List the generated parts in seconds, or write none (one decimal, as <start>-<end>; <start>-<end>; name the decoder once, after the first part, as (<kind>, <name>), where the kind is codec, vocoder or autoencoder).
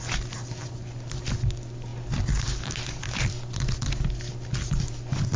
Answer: none